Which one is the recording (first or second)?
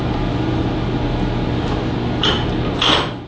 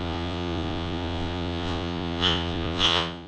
first